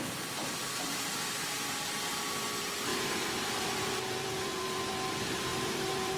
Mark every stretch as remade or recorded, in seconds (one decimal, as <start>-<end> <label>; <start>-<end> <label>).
0.0-0.6 remade; 0.6-2.1 recorded; 2.1-6.2 remade